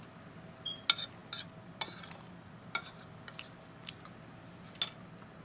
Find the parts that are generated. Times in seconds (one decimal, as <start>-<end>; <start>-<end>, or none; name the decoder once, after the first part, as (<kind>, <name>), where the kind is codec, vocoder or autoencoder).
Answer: none